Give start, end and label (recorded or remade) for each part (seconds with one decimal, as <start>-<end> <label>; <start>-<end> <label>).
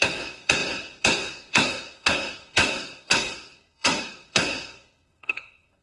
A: 0.0-5.8 remade